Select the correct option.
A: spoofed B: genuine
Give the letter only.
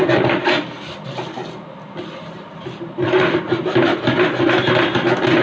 B